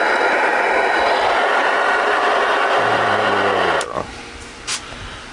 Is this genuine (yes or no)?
no